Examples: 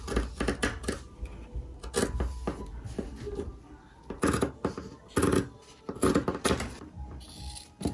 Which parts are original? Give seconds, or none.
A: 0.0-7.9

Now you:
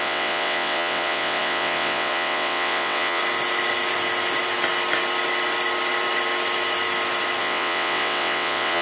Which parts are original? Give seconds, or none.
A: 3.2-7.4

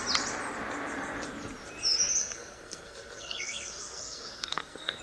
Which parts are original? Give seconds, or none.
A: 0.0-2.2

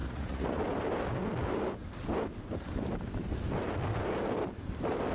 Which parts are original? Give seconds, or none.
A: 0.6-5.1

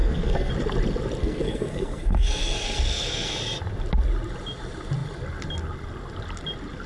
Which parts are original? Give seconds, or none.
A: 0.5-1.2; 3.3-6.9

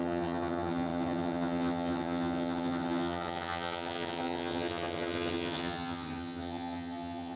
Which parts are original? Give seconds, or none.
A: none

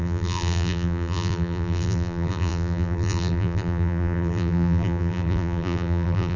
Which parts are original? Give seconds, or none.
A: none

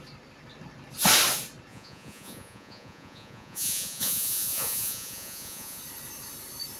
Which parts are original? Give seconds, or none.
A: 0.0-1.7; 5.8-6.8